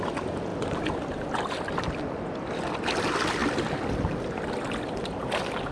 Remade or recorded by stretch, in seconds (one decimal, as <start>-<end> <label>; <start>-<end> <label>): 0.0-5.7 recorded